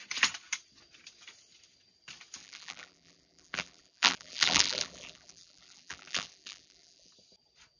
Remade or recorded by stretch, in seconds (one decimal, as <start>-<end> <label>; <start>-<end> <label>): 0.0-2.4 recorded; 2.4-7.1 remade; 7.1-7.8 recorded